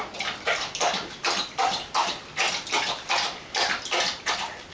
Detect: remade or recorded recorded